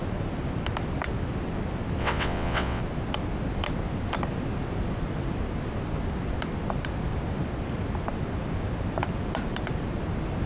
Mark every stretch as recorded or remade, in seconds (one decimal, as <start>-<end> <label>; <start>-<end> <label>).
0.0-2.0 recorded; 2.0-2.8 remade; 2.8-10.5 recorded